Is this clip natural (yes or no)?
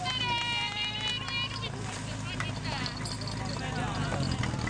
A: yes